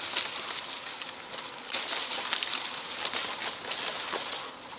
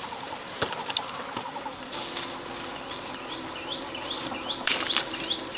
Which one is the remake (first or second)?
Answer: second